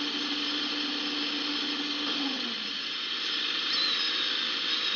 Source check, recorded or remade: recorded